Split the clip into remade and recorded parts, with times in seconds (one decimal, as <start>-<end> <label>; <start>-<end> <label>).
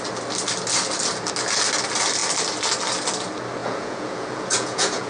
0.0-3.6 recorded; 3.6-5.1 remade